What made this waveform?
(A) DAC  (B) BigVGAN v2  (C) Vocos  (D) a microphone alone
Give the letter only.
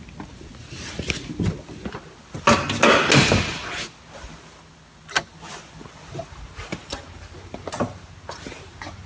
D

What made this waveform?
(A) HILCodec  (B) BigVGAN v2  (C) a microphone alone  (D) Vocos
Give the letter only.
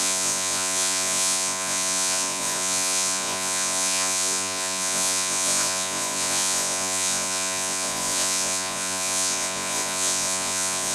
D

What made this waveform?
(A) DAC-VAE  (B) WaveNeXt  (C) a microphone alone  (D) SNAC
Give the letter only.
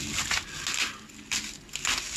C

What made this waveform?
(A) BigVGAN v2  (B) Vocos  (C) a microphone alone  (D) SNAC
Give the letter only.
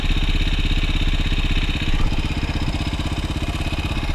C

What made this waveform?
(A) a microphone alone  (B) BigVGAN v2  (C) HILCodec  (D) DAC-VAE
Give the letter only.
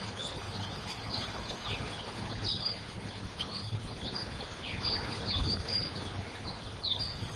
C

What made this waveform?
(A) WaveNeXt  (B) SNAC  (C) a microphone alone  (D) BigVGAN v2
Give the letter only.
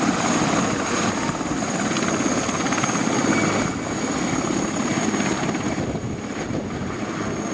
C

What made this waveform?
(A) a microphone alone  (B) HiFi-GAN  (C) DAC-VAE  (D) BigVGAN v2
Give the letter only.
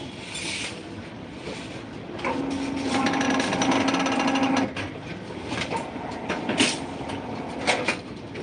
A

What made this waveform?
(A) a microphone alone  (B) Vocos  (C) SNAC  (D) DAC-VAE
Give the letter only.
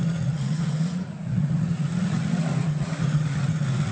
B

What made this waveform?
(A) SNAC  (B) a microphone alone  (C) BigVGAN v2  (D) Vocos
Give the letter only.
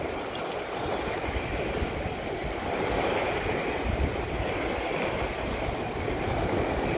B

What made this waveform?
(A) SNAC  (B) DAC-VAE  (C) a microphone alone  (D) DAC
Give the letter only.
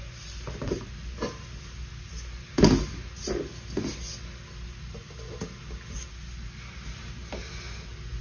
C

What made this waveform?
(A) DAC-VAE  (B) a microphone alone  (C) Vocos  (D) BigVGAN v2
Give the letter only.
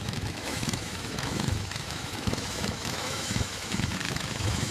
A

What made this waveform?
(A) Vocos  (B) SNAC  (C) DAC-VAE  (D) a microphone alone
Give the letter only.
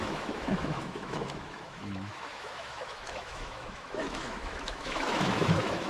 C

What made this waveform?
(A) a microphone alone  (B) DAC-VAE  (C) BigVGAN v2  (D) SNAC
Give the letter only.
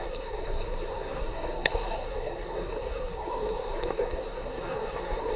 D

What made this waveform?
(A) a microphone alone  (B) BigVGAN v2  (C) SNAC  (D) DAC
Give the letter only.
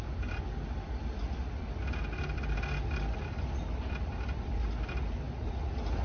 A